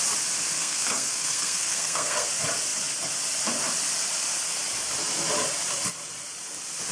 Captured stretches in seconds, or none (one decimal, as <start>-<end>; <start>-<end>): 0.0-0.5; 2.3-6.9